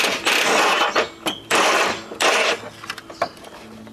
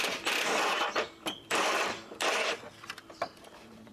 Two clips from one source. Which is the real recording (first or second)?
first